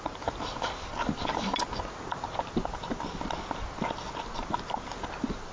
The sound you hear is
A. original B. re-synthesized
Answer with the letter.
A